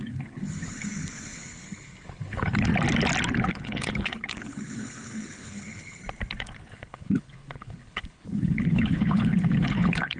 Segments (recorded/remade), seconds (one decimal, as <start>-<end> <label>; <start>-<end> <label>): 0.0-2.7 remade; 2.7-3.5 recorded; 3.5-6.0 remade; 6.0-6.7 recorded; 6.7-10.2 remade